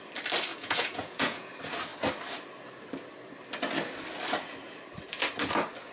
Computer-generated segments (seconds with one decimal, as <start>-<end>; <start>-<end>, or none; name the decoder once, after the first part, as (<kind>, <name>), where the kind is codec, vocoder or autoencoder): 0.5-1.5 (vocoder, Vocos)